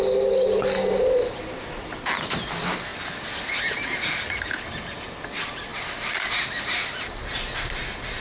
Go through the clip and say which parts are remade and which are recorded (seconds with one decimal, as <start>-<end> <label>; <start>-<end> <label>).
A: 0.0-8.2 recorded